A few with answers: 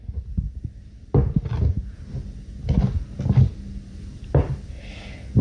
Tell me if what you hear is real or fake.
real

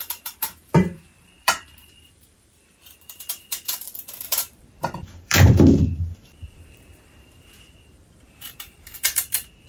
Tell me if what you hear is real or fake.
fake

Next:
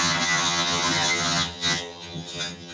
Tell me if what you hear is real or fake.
fake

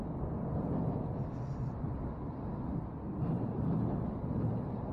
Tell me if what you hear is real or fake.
real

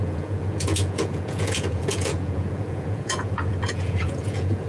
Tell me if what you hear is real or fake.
fake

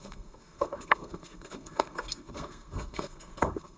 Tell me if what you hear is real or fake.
fake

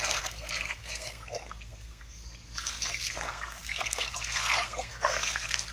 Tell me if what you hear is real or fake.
fake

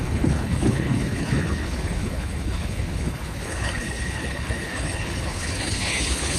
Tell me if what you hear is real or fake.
fake